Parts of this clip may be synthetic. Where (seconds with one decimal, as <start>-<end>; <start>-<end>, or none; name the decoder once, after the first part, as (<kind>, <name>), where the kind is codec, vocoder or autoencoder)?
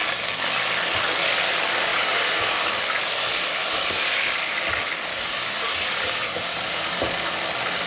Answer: 1.9-2.8 (codec, DAC); 5.1-6.4